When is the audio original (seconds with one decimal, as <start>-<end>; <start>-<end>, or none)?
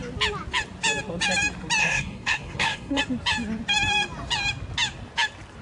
0.0-1.8; 3.0-5.6